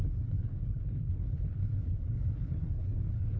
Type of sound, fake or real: fake